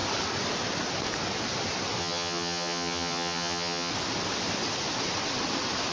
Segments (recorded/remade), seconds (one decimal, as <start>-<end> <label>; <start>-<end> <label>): 0.0-2.0 recorded; 2.0-3.9 remade; 3.9-5.9 recorded